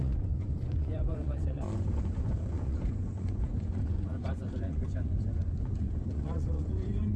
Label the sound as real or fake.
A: fake